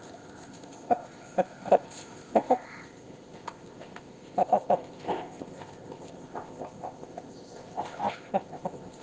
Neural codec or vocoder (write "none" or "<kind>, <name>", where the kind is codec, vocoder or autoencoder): codec, ZipCodec